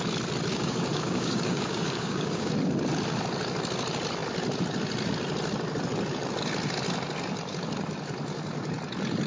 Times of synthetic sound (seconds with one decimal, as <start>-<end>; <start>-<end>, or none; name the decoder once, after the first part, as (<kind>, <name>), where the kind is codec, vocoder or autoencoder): 0.5-2.5 (codec, DAC)